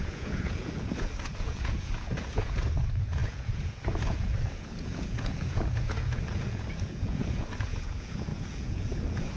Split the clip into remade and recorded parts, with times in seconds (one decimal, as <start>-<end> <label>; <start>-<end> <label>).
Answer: 0.0-9.4 remade